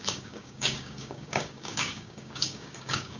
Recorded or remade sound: remade